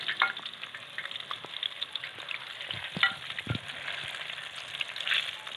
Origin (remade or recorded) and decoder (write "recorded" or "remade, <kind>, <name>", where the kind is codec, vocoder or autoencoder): recorded